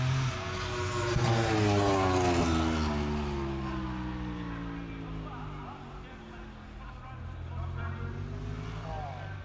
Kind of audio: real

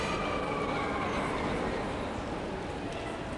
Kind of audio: real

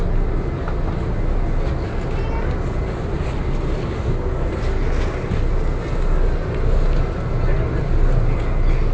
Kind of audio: real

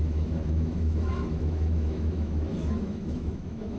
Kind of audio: fake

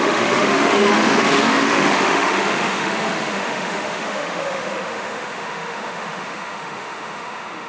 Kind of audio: fake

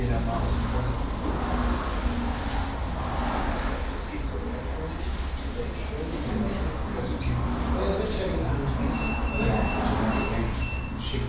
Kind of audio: real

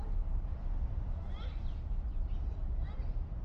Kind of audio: real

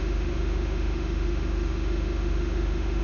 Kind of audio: fake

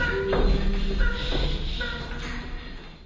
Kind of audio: real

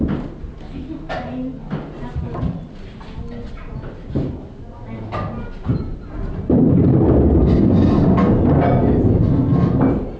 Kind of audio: real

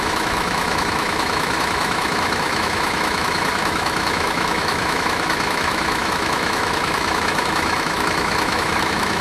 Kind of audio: fake